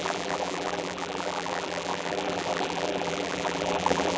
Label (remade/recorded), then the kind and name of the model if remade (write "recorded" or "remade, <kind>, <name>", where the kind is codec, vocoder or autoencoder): remade, vocoder, BigVGAN v2